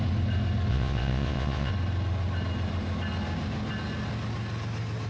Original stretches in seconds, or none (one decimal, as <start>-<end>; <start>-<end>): 0.0-0.7; 1.7-5.1